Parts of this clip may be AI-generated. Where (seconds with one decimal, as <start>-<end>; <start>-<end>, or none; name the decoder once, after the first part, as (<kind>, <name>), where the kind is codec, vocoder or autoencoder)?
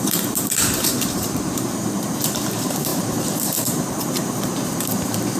0.0-5.4 (vocoder, BigVGAN v2)